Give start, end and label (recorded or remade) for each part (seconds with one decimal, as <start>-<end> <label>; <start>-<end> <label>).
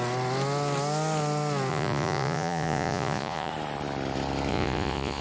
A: 0.0-1.7 recorded; 1.7-3.5 remade; 3.5-4.5 recorded; 4.5-5.2 remade